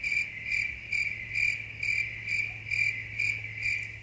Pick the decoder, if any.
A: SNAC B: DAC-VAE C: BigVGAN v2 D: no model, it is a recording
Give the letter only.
D